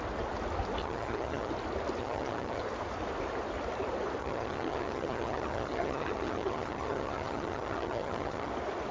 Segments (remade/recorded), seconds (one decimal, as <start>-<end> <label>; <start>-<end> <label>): 0.0-0.8 recorded; 0.8-1.5 remade; 1.5-2.0 recorded; 2.0-2.6 remade; 2.6-4.2 recorded; 4.2-8.5 remade; 8.5-8.9 recorded